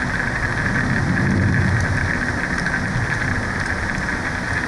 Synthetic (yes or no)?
no